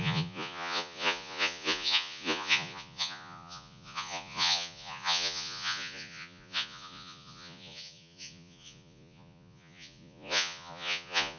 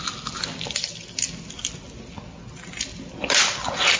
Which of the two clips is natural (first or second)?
second